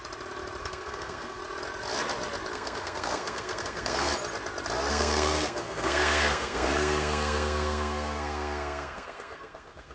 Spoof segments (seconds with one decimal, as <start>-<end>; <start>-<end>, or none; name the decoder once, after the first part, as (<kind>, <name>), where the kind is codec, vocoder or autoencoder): 0.6-1.4 (codec, SNAC); 2.5-4.1; 4.9-9.9